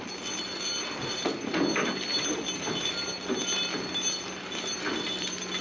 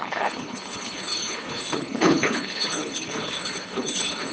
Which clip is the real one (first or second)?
first